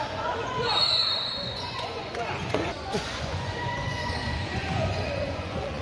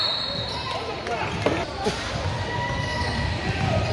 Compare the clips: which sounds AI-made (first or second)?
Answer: first